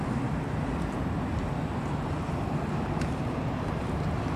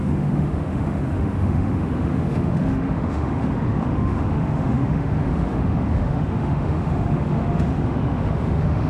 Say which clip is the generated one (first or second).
second